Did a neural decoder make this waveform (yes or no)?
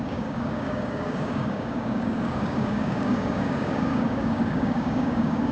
yes